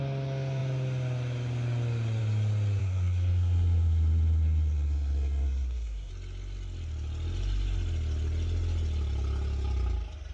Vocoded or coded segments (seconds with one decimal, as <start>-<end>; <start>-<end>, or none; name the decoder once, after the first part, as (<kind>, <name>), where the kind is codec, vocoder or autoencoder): 2.8-6.1 (codec, SNAC)